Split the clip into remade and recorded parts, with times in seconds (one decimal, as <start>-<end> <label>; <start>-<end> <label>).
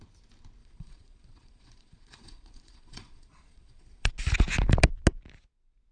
0.0-0.6 recorded; 0.6-4.1 remade; 4.1-5.9 recorded